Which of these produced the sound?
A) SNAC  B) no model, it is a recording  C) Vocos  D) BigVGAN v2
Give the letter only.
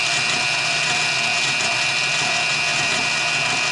B